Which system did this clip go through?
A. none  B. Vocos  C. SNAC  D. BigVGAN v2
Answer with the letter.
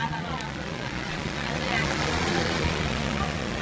B